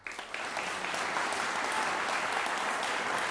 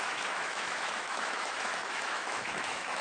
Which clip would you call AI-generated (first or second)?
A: second